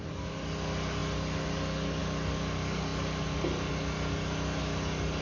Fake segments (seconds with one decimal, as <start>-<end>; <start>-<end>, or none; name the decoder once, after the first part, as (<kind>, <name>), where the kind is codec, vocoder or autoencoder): none